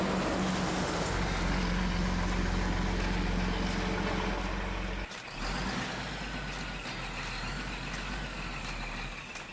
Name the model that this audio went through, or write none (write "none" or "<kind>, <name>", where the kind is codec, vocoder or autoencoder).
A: none